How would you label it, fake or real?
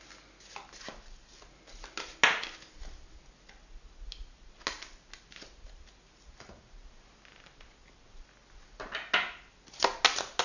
real